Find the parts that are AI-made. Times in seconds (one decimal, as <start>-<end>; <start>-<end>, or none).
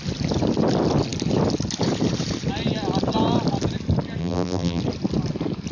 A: 4.2-4.8